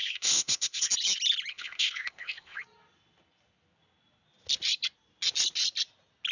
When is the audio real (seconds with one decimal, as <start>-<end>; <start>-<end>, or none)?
0.9-1.5; 2.6-6.3